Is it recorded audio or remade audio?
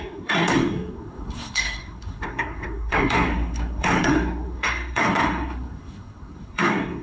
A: remade